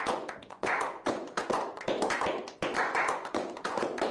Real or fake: fake